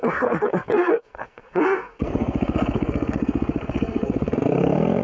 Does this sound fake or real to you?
fake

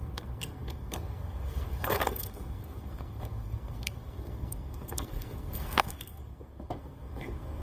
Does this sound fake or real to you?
fake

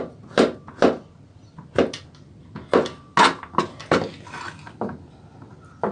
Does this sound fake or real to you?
real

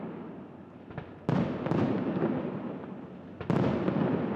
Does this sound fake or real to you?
real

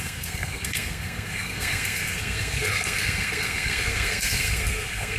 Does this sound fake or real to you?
fake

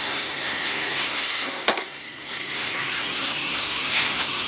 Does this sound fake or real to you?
fake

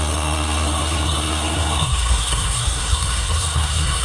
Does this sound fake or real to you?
fake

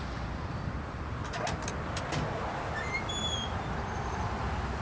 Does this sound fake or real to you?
real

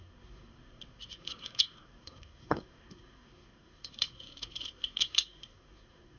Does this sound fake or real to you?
fake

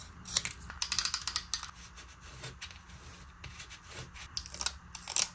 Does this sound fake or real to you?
real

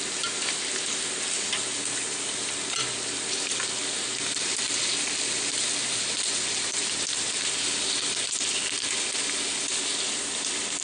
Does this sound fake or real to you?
real